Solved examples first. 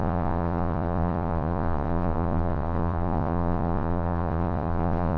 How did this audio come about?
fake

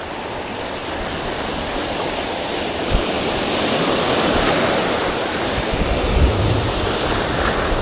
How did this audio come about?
real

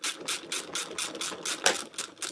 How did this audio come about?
real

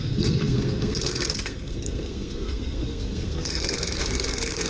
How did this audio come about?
fake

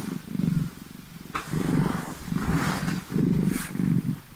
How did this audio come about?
real